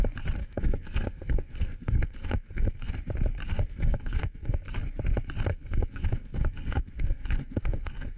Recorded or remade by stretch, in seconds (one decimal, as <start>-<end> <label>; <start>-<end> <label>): 0.0-0.4 recorded; 0.4-2.9 remade; 2.9-3.5 recorded; 3.5-4.7 remade; 4.7-5.5 recorded; 5.5-8.2 remade